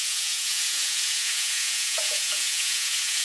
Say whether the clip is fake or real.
fake